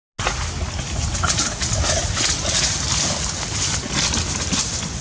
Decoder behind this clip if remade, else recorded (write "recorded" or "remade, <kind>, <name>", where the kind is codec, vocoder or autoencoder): recorded